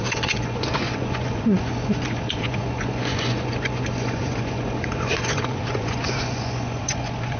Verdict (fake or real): fake